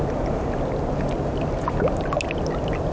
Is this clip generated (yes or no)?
no